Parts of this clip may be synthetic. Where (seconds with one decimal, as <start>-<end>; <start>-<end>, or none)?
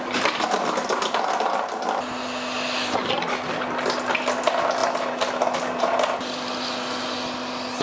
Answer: none